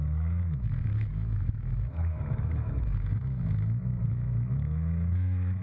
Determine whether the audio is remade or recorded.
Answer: remade